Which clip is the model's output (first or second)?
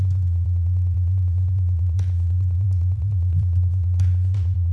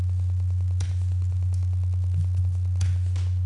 first